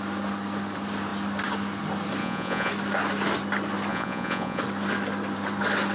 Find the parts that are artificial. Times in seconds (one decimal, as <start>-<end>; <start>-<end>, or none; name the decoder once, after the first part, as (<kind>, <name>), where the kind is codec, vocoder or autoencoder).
2.2-2.7 (vocoder, Vocos); 3.9-4.6